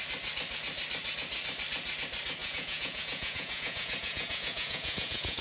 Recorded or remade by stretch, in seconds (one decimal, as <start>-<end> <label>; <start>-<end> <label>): 0.0-2.4 recorded; 2.4-5.4 remade